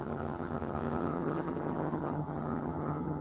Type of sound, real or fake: fake